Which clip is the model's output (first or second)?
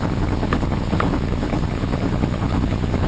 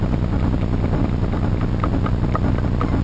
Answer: first